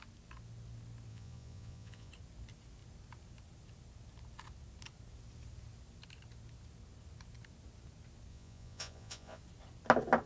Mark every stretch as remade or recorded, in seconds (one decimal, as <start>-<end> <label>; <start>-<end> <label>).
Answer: 0.0-1.1 recorded; 1.1-2.1 remade; 2.1-8.3 recorded; 8.3-9.4 remade; 9.4-10.3 recorded